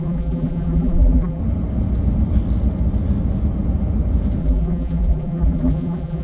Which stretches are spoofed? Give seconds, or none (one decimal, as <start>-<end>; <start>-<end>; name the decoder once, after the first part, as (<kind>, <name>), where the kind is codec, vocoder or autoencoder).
0.0-1.4 (vocoder, BigVGAN v2); 4.4-6.2